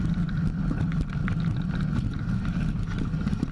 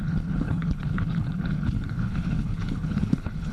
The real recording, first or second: first